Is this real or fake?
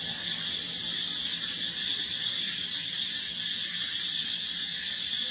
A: real